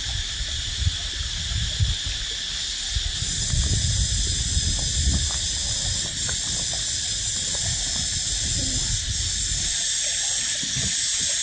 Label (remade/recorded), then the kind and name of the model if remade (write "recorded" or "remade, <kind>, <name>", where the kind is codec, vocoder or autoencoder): recorded